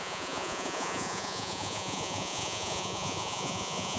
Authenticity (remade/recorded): remade